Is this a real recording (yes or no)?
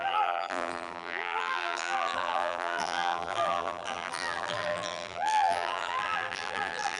no